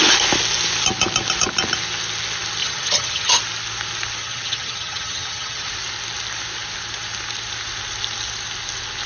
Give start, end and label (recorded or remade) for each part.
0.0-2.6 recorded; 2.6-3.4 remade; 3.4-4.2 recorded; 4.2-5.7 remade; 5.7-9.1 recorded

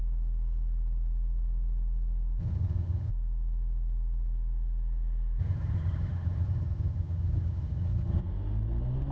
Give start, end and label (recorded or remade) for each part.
0.0-2.4 recorded; 2.4-3.1 remade; 3.1-5.4 recorded; 5.4-8.2 remade; 8.2-9.1 recorded

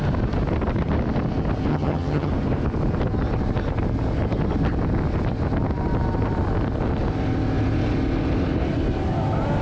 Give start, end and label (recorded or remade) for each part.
0.0-1.7 recorded; 1.7-2.3 remade; 2.3-9.6 recorded

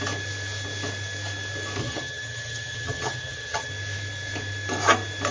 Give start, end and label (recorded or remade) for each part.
0.0-1.8 recorded; 1.8-3.7 remade; 3.7-5.3 recorded

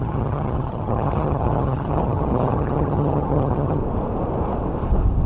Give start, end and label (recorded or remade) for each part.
0.0-3.8 remade; 3.8-5.3 recorded

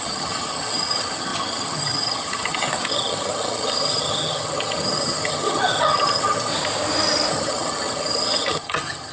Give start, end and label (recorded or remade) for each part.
0.0-6.5 remade; 6.5-7.3 recorded; 7.3-9.1 remade

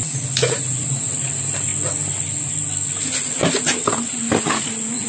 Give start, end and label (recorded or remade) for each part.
0.0-5.1 recorded